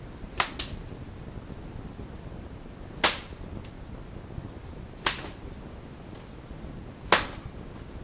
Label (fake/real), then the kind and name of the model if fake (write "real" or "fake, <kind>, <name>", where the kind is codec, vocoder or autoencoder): real